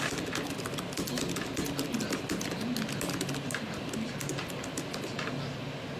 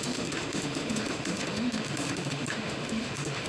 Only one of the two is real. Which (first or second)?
first